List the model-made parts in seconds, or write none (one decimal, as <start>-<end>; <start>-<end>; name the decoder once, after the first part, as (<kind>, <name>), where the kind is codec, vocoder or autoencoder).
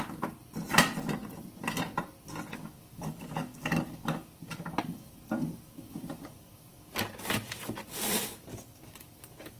2.5-7.0 (codec, DAC); 8.5-9.6